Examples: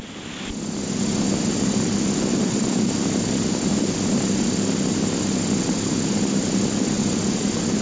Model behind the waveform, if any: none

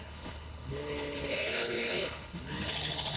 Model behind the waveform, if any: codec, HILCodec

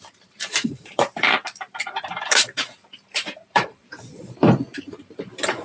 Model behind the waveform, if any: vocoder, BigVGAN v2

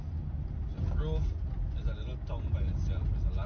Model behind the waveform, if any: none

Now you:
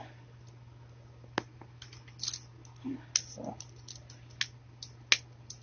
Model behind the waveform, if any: none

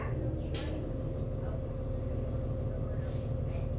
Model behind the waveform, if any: none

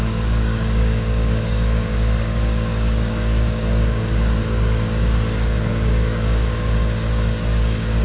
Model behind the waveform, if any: codec, DAC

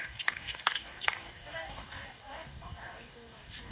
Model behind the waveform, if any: codec, DAC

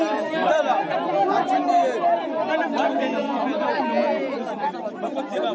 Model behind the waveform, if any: none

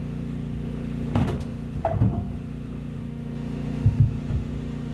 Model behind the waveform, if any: autoencoder, DAC-VAE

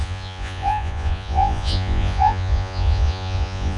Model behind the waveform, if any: vocoder, Vocos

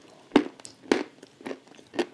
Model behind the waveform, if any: none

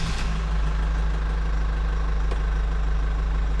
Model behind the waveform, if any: none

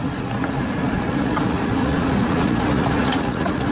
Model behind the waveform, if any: vocoder, Vocos